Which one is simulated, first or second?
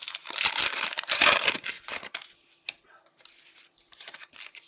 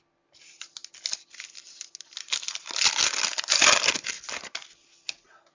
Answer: first